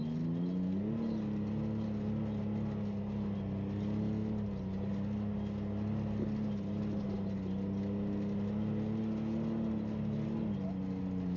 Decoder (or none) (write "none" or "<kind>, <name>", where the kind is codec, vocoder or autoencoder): none